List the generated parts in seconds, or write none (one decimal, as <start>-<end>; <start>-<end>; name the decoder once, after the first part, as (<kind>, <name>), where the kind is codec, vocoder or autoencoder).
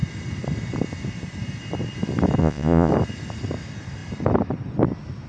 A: 2.4-2.9 (vocoder, Vocos)